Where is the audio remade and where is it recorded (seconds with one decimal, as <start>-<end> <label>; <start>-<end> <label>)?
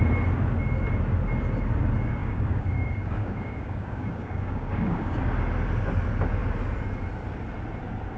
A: 0.0-2.2 recorded; 2.2-5.2 remade; 5.2-8.2 recorded